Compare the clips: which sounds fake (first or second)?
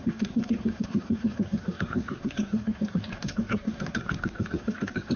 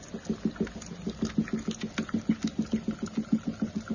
first